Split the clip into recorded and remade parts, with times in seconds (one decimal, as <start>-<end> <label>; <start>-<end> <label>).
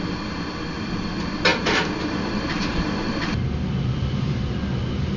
0.0-1.5 recorded; 1.5-3.1 remade; 3.1-5.2 recorded